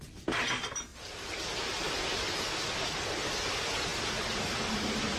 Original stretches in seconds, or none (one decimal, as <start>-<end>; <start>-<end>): 0.0-5.2